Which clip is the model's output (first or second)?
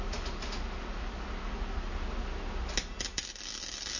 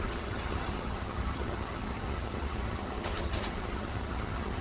second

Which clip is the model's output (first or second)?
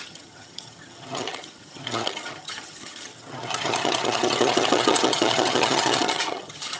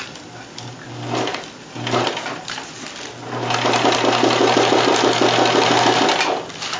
first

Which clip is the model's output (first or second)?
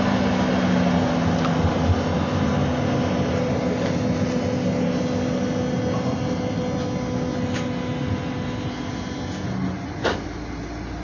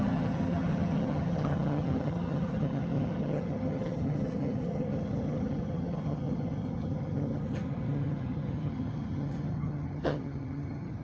second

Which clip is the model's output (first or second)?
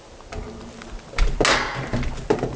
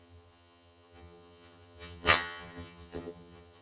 second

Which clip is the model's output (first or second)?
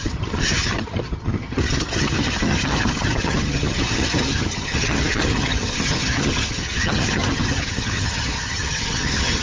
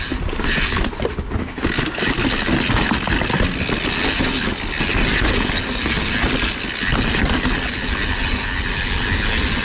first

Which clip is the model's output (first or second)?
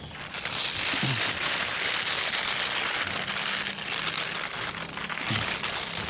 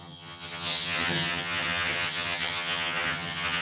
second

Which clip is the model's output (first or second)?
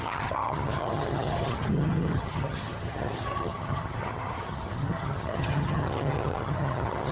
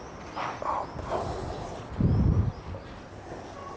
first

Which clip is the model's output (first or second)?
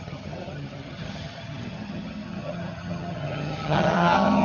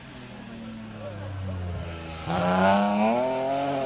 first